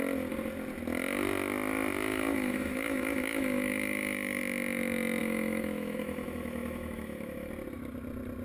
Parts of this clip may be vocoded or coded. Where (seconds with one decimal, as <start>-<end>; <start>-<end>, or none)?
2.1-4.4; 5.2-7.5